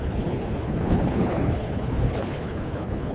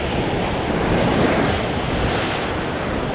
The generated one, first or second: first